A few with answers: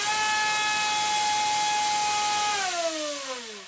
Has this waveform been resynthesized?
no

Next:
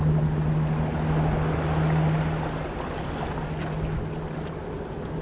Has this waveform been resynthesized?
no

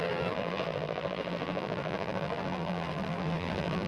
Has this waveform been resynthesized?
yes